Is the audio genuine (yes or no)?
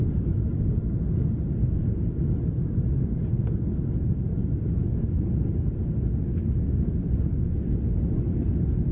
yes